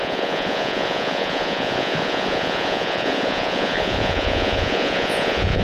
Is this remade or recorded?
remade